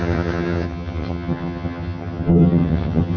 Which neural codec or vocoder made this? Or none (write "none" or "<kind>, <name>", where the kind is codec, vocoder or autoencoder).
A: vocoder, HiFi-GAN